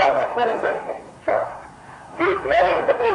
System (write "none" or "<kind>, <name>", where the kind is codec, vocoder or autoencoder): codec, SNAC